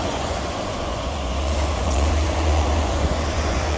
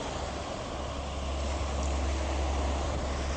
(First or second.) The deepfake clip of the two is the first